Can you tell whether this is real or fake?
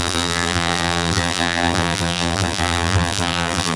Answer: fake